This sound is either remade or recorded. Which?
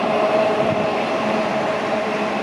remade